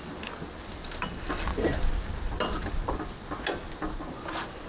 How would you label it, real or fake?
real